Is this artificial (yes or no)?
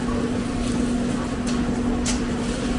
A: no